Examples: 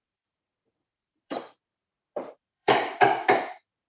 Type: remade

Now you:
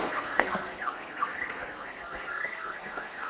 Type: remade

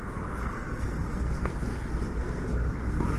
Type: remade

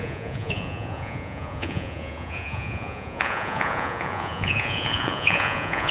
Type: remade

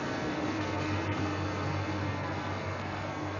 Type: remade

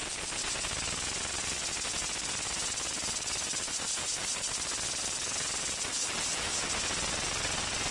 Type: recorded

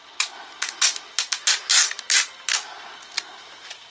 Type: recorded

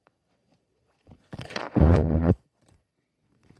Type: remade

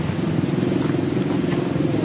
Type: recorded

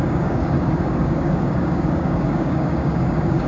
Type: remade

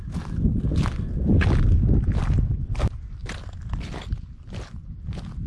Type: recorded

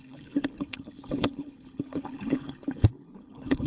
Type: remade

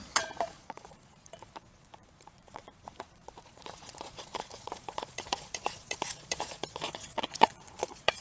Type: remade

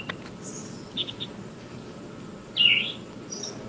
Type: recorded